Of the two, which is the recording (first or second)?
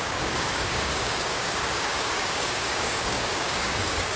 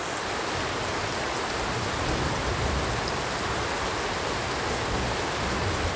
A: second